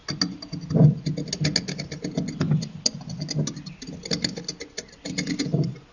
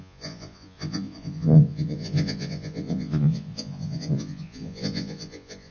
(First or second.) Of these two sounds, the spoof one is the second